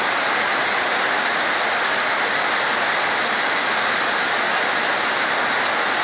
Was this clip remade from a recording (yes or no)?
no